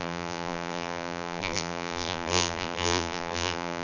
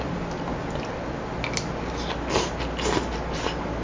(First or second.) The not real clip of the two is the first